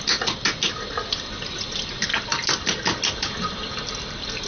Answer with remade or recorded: recorded